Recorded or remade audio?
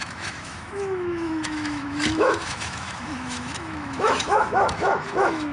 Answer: remade